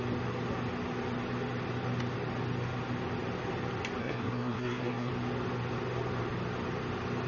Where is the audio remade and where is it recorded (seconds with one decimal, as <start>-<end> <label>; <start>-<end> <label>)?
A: 0.0-4.0 recorded; 4.0-5.1 remade; 5.1-7.3 recorded